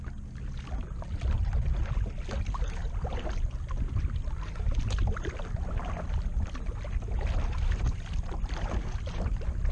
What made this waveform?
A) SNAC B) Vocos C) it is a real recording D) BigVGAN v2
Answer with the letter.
C